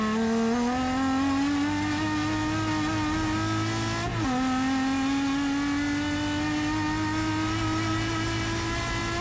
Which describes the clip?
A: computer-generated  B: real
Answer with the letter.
B